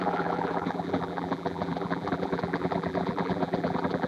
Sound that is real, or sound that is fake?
fake